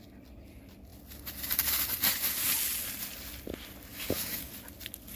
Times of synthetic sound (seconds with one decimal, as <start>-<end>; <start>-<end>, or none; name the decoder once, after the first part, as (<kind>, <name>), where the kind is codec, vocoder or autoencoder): 3.9-4.5 (codec, DAC)